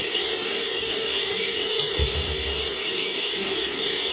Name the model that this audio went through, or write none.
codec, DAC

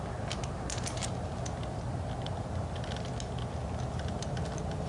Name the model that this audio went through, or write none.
none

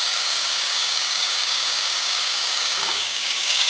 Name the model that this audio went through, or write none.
codec, DAC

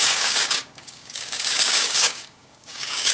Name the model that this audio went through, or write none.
codec, DAC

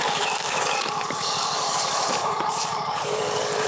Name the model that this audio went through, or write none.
codec, DAC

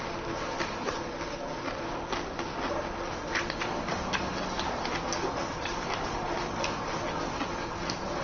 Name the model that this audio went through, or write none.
none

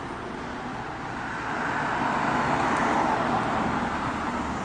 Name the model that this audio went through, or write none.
none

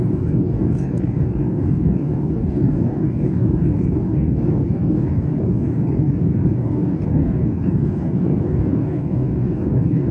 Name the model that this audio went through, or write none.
codec, DAC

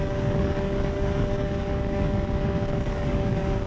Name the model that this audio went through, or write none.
codec, DAC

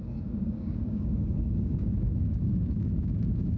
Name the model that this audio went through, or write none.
codec, DAC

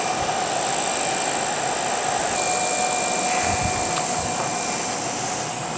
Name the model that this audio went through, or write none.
none